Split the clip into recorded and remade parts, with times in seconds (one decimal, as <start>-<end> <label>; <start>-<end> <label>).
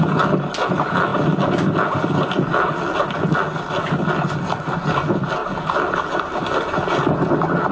0.0-7.7 recorded